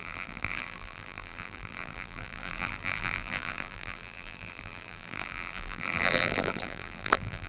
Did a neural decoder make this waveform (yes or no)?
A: yes